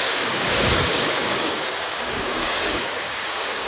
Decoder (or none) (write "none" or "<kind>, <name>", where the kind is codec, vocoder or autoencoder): codec, DAC